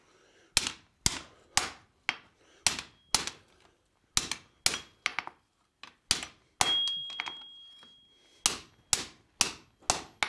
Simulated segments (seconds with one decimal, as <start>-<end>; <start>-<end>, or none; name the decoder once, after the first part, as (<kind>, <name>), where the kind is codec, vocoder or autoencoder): none